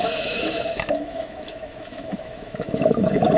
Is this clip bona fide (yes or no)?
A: no